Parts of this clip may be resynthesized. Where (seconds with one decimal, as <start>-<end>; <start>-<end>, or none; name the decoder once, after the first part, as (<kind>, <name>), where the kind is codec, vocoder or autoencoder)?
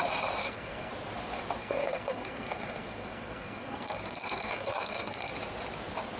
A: 0.4-0.9 (codec, SNAC); 1.6-5.3